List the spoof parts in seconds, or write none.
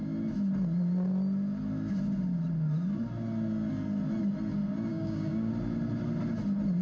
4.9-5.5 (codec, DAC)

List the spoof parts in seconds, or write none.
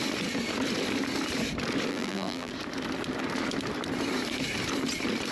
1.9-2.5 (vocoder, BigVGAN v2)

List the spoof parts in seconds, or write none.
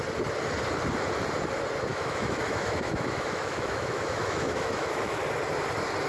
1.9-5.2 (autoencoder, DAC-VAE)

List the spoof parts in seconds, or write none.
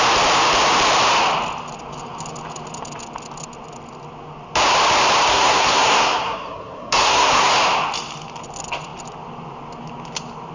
5.3-7.5 (codec, SNAC)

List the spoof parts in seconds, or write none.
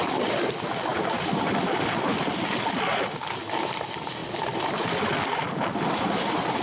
0.9-3.4 (vocoder, BigVGAN v2)